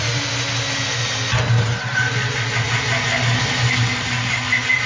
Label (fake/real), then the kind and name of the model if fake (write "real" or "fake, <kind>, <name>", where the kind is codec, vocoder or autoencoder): real